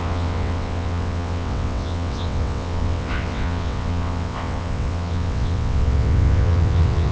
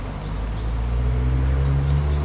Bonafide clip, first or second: second